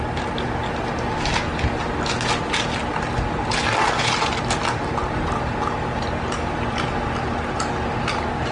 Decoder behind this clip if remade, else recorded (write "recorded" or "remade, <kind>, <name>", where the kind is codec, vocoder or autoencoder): recorded